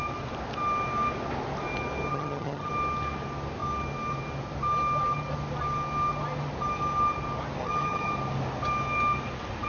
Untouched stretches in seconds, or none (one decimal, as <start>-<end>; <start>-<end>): 0.0-2.1; 2.7-7.6; 8.1-9.7